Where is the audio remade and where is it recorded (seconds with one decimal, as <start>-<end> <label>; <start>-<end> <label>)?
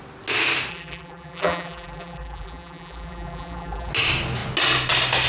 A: 0.0-0.7 recorded; 0.7-3.9 remade; 3.9-5.3 recorded